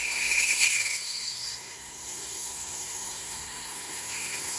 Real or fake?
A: fake